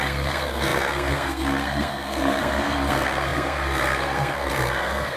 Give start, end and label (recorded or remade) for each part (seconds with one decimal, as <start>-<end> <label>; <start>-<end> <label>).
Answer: 0.0-5.2 remade